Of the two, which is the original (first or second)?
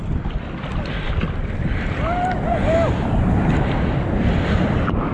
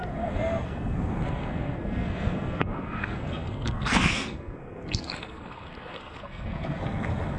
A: first